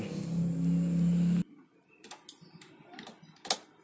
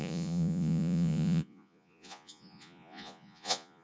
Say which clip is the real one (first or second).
first